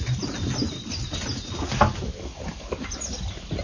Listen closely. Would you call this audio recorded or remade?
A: recorded